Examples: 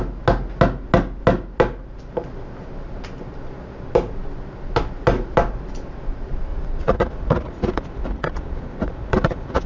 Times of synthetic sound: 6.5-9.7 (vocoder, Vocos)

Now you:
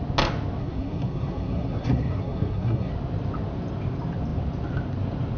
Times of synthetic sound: 0.6-2.9 (codec, SNAC)

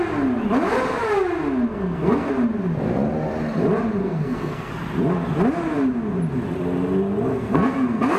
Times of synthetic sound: 1.7-2.3 (codec, SNAC); 4.0-4.7; 7.3-8.2

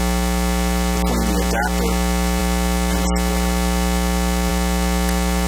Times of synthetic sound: none

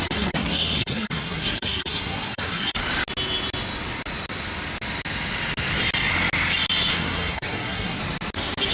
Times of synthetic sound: 0.0-2.8 (codec, SNAC); 6.9-8.0

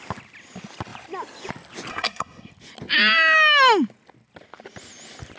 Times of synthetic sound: 1.9-2.5 (codec, SNAC)